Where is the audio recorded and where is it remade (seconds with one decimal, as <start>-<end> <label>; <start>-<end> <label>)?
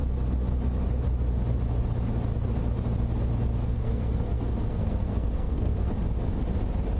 0.0-3.6 recorded; 3.6-5.9 remade; 5.9-7.0 recorded